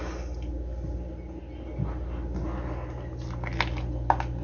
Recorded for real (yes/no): yes